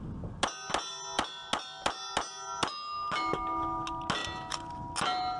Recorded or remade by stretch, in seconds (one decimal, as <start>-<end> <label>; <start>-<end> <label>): 0.0-5.4 recorded